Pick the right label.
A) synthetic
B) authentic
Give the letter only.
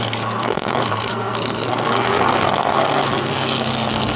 A